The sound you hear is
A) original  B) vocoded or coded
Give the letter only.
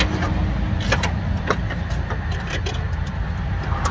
A